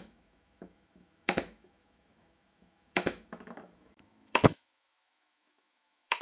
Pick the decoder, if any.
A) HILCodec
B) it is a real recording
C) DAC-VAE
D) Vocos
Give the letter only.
C